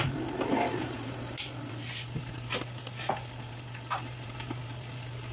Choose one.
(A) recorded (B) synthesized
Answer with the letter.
A